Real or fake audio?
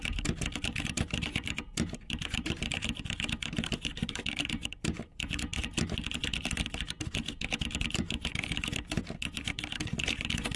fake